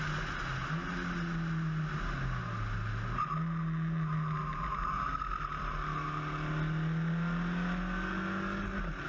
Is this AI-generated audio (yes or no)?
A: no